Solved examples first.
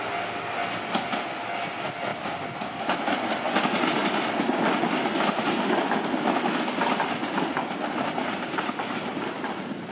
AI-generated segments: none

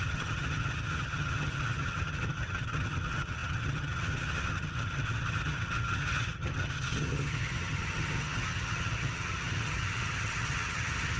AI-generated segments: 0.0-11.2 (vocoder, HiFi-GAN)

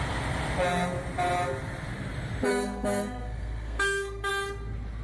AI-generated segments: 2.5-4.3 (codec, SNAC)

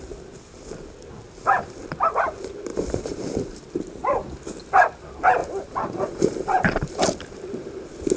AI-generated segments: 2.7-3.6 (vocoder, BigVGAN v2); 5.4-7.0